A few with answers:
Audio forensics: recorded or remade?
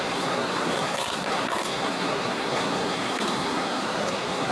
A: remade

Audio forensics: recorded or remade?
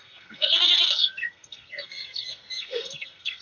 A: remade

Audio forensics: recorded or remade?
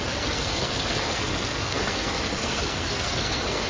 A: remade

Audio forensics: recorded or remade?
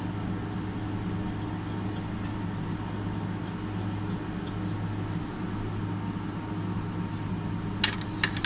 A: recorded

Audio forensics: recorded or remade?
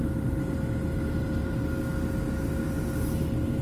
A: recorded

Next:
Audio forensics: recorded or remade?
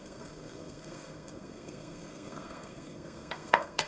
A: remade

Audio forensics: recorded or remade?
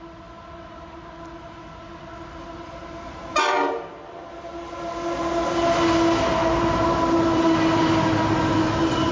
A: recorded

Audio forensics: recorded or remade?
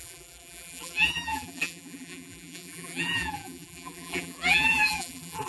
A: remade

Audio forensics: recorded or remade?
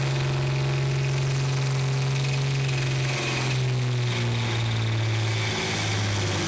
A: recorded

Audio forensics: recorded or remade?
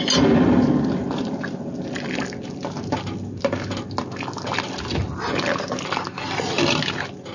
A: recorded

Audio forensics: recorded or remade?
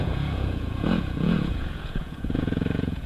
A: remade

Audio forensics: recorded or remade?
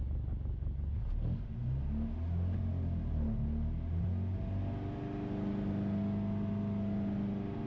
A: recorded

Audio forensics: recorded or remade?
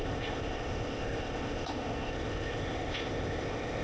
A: remade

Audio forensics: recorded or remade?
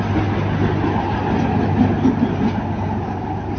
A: recorded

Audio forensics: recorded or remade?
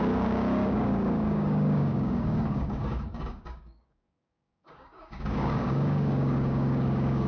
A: remade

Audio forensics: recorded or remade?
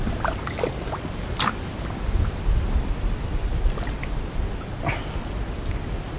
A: recorded